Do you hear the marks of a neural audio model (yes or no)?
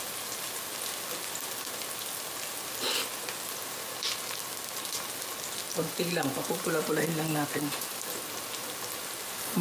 no